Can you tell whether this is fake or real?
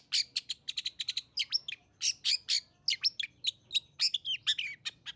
real